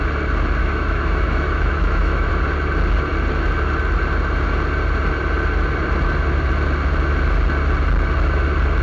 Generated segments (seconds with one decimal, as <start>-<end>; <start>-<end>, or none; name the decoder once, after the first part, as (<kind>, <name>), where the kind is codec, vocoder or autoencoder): 0.6-2.3 (autoencoder, DAC-VAE)